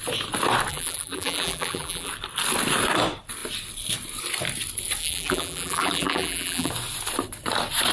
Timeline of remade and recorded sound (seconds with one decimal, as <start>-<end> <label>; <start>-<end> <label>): 0.0-0.7 recorded; 0.7-2.1 remade; 2.1-5.0 recorded; 5.0-6.7 remade; 6.7-7.9 recorded